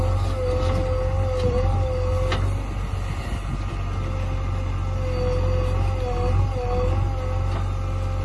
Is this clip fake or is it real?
real